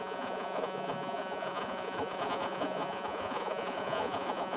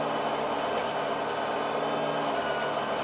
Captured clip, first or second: second